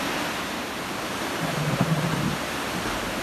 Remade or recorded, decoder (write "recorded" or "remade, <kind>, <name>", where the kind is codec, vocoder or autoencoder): recorded